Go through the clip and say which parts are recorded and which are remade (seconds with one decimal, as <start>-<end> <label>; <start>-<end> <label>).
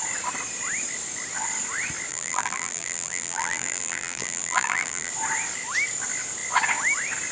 0.0-2.1 recorded; 2.1-5.1 remade; 5.1-7.3 recorded